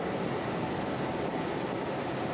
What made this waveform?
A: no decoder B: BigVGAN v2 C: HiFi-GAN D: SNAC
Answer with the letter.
A